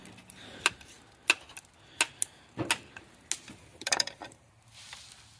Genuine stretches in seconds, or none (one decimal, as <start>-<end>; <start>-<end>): 0.0-3.7; 4.5-5.4